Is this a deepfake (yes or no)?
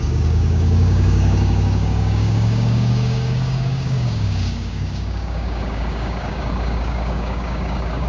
yes